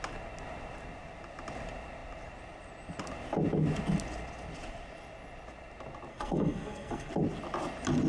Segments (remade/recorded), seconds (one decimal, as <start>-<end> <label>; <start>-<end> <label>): 0.0-6.1 recorded; 6.1-7.1 remade; 7.1-8.1 recorded